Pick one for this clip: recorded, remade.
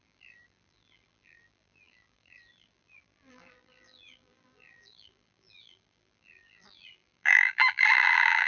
remade